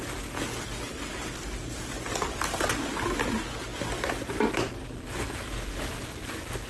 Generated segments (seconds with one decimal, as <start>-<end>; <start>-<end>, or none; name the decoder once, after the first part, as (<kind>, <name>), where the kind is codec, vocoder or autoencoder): none